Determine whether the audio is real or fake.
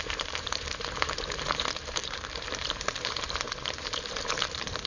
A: fake